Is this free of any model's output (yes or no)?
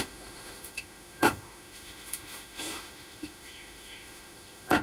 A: no